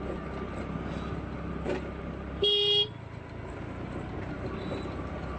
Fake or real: real